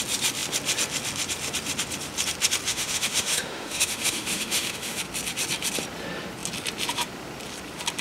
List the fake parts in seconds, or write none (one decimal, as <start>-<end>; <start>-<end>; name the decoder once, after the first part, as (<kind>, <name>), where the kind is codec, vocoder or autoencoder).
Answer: 2.7-5.0 (autoencoder, DAC-VAE)